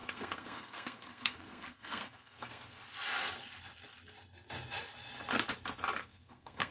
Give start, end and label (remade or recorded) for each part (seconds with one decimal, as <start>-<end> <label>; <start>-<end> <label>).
0.0-2.8 remade; 2.8-6.0 recorded; 6.0-6.7 remade